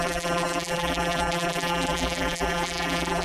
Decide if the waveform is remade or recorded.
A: remade